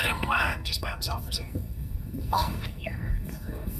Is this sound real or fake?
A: fake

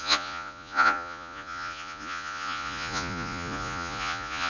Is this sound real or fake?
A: fake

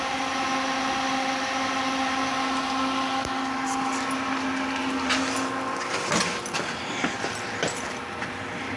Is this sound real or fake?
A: fake